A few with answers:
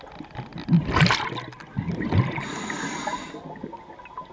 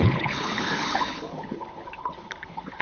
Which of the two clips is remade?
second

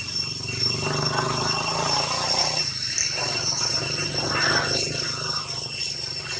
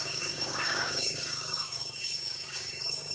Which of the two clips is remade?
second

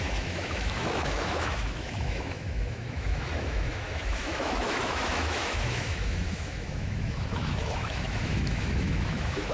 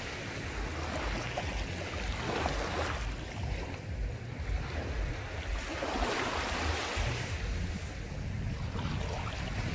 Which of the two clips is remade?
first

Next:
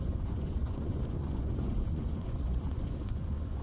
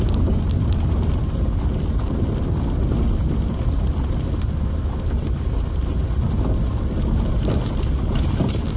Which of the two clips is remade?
first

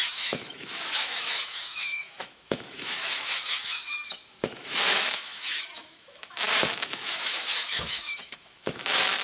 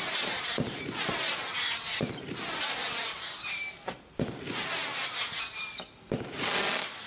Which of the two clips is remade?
first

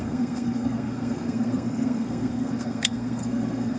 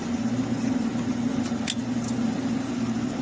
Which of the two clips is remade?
first